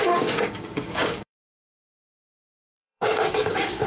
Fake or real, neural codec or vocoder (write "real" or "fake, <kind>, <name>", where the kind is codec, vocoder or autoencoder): fake, codec, DAC